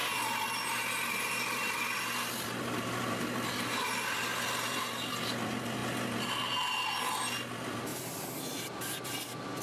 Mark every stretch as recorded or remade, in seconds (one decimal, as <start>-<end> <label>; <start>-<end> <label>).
0.0-7.9 recorded; 7.9-8.9 remade; 8.9-9.6 recorded